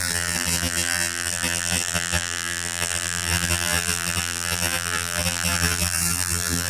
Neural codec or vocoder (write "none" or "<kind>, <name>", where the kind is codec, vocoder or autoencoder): vocoder, BigVGAN v2